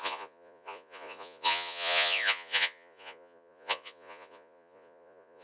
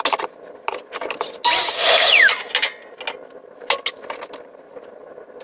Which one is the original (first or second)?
second